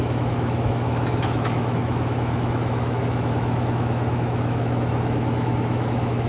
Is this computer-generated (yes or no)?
yes